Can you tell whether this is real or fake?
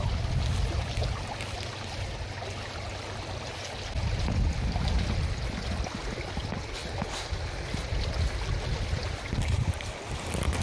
real